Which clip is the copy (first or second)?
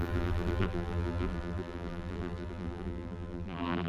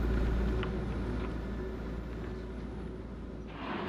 first